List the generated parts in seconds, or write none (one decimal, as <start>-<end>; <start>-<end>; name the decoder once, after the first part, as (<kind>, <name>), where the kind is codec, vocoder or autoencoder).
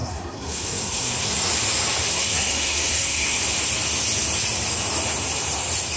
0.0-1.5 (codec, SNAC); 2.1-3.4